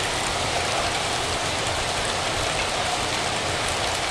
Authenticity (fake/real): real